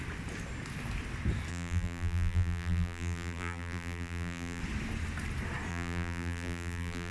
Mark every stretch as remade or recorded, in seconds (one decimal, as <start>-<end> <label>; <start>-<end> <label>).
0.0-1.5 recorded; 1.5-4.6 remade; 4.6-5.7 recorded; 5.7-7.1 remade